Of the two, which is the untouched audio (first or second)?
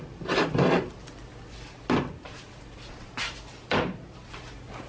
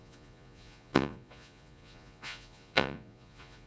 first